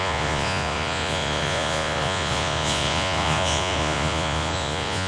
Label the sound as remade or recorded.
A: remade